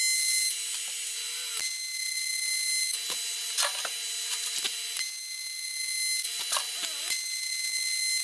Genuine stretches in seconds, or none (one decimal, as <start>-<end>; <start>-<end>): 0.0-8.2